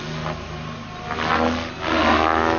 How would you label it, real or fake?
real